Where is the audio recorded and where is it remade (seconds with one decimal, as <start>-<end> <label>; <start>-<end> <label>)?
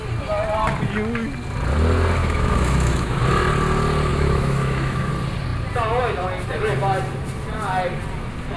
0.0-2.2 recorded; 2.2-3.2 remade; 3.2-4.1 recorded; 4.1-5.1 remade; 5.1-8.6 recorded